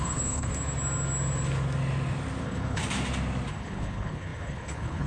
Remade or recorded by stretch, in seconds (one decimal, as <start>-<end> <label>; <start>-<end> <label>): 0.0-0.5 remade; 0.5-2.4 recorded; 2.4-2.8 remade; 2.8-3.5 recorded; 3.5-5.1 remade